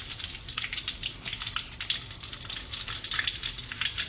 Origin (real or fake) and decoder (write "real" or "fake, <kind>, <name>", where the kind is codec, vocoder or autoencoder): real